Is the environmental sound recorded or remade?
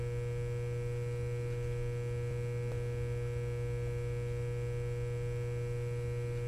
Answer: recorded